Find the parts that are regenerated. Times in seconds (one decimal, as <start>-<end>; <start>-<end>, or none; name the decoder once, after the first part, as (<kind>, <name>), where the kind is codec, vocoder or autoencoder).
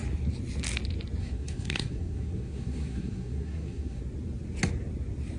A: 1.2-4.0 (codec, SNAC)